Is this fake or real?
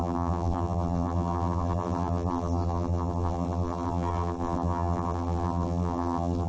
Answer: fake